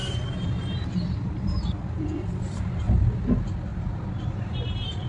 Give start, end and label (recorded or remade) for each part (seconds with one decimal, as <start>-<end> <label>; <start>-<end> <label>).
0.0-3.1 remade; 3.1-3.7 recorded; 3.7-5.1 remade